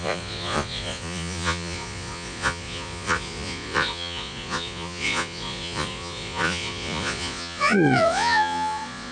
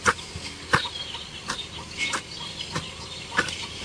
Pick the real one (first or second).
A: second